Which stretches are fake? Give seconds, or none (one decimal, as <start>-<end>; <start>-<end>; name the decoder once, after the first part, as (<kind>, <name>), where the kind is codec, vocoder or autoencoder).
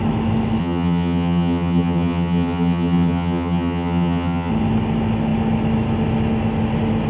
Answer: 0.6-4.5 (vocoder, HiFi-GAN)